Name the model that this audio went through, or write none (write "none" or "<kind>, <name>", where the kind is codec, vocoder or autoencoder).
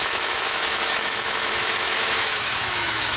autoencoder, DAC-VAE